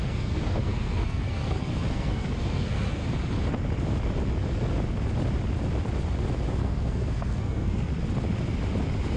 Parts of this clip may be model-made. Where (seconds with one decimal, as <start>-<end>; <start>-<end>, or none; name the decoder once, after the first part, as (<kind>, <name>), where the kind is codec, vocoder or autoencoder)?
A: 0.0-3.0 (codec, SNAC); 6.5-7.9